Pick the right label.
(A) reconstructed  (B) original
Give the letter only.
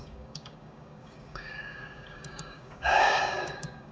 A